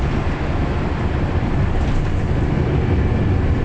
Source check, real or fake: real